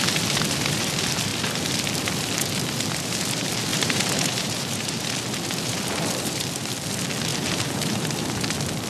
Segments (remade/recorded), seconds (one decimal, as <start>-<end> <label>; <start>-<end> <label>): 0.0-3.7 recorded; 3.7-5.0 remade; 5.0-7.3 recorded; 7.3-8.3 remade; 8.3-8.9 recorded